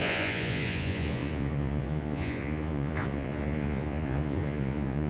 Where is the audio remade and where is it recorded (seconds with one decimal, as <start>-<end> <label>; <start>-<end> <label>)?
0.0-5.1 remade